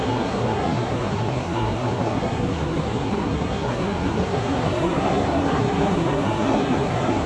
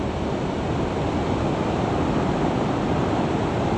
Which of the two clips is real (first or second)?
second